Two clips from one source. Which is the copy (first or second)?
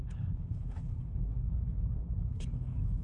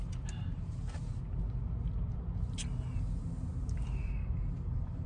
first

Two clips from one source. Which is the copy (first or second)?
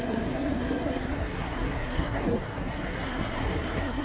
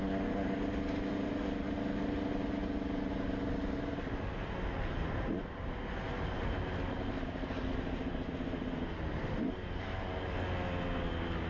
first